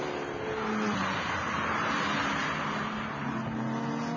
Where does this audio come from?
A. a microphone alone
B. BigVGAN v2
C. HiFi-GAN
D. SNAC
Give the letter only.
A